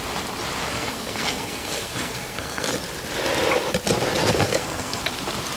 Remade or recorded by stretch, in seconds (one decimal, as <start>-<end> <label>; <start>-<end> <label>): 0.0-0.6 recorded; 0.6-2.7 remade; 2.7-4.2 recorded; 4.2-5.0 remade; 5.0-5.6 recorded